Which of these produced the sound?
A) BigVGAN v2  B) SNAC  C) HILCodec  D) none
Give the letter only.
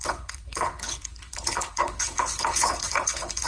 C